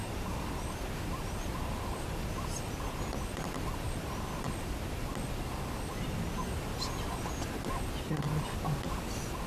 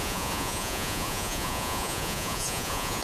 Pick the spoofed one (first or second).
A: second